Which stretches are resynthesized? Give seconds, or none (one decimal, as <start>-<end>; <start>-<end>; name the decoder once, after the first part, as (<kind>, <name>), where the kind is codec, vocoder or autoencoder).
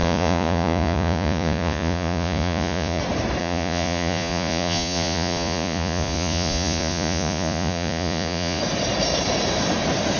0.0-3.0 (vocoder, Vocos); 3.4-8.6